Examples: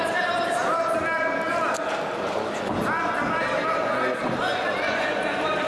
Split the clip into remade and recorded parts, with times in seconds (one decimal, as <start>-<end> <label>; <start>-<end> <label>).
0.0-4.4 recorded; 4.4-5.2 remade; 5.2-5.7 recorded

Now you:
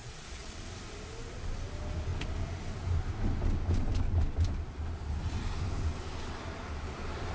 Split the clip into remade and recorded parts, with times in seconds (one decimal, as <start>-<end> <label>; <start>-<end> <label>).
0.0-0.6 remade; 0.6-7.3 recorded

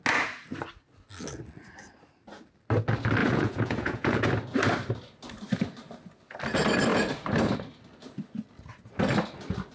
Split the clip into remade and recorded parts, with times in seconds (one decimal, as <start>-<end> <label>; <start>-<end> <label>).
0.0-3.2 recorded; 3.2-4.3 remade; 4.3-9.7 recorded

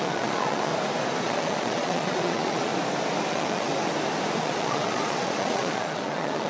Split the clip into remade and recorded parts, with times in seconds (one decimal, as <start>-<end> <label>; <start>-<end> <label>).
0.0-0.7 remade; 0.7-1.2 recorded; 1.2-2.7 remade; 2.7-3.3 recorded; 3.3-3.7 remade; 3.7-4.4 recorded; 4.4-6.5 remade

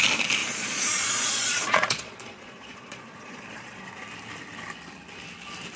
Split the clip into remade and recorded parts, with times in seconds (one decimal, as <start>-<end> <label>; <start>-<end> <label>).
0.0-0.4 recorded; 0.4-3.9 remade; 3.9-5.8 recorded

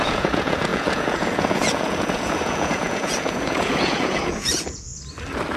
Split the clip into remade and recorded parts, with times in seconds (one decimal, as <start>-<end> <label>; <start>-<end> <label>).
0.0-4.9 remade; 4.9-5.6 recorded

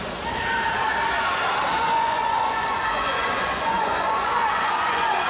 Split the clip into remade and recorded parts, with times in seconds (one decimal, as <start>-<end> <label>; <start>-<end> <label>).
0.0-1.7 recorded; 1.7-5.3 remade